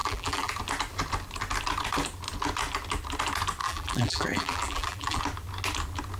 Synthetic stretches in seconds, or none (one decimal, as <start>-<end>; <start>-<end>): 0.0-0.5; 3.6-5.2